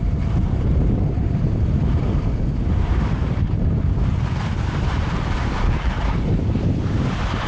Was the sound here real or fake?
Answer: fake